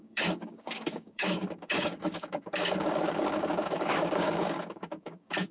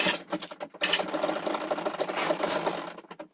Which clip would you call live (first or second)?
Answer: second